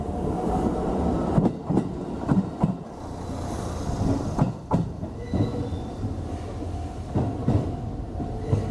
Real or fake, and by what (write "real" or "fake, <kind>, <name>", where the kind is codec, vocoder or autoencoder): real